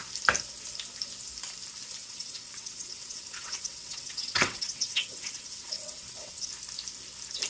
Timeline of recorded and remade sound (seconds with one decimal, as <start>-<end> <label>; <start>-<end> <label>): 0.0-2.0 recorded; 2.0-6.5 remade; 6.5-7.5 recorded